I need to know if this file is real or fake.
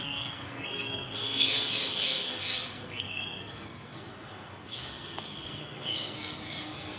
fake